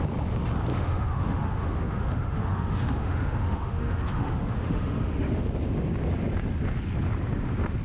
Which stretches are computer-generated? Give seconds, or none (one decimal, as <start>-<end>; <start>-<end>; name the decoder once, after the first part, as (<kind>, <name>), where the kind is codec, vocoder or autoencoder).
0.7-5.4 (autoencoder, DAC-VAE)